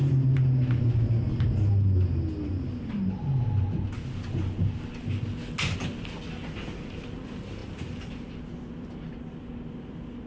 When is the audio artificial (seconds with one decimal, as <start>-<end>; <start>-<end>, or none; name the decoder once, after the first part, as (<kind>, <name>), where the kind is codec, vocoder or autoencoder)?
none